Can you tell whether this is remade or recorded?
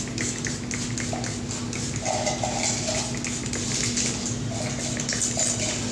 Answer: recorded